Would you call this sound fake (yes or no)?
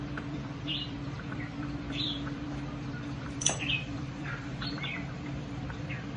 yes